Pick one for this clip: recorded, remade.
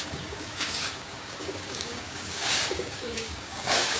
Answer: remade